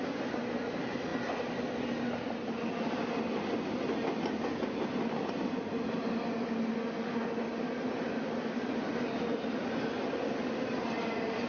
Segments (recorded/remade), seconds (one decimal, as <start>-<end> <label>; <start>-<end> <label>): 0.0-11.5 recorded